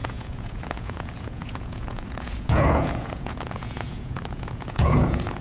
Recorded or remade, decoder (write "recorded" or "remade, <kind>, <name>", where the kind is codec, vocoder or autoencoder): remade, vocoder, Vocos